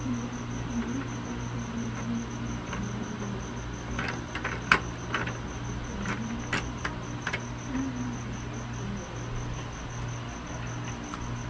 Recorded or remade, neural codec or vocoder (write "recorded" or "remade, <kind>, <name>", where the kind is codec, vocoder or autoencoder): recorded